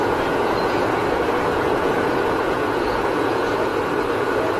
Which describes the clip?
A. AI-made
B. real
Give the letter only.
A